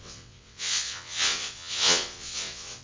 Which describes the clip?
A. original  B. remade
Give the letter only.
B